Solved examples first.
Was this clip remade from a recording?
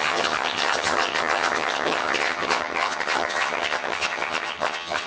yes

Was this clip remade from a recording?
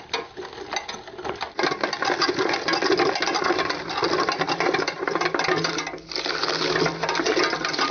no